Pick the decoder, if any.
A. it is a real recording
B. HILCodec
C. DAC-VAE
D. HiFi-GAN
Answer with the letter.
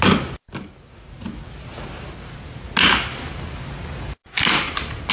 A